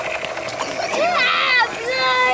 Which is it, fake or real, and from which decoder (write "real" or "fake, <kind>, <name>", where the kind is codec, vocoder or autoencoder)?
real